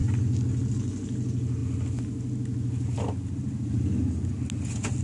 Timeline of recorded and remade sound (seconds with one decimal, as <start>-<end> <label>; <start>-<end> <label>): 0.0-5.0 recorded